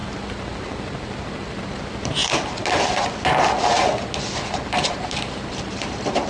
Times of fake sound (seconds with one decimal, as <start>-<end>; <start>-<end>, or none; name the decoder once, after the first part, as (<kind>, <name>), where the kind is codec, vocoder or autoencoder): 1.6-2.2 (vocoder, BigVGAN v2); 4.9-6.3